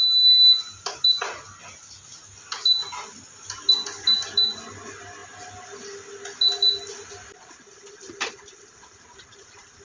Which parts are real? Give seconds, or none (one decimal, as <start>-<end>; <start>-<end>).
0.0-9.8